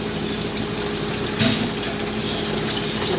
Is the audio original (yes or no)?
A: yes